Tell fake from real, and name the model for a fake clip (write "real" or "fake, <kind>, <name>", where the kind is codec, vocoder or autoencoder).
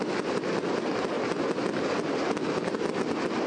real